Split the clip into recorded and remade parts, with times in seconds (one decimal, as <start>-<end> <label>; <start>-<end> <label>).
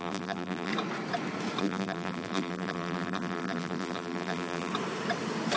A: 0.0-0.7 remade; 0.7-1.6 recorded; 1.6-4.7 remade; 4.7-5.6 recorded